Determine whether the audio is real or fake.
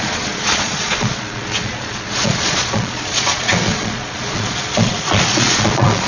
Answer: fake